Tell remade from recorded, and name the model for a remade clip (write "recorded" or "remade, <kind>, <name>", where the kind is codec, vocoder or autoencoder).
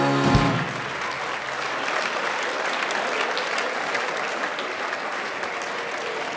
recorded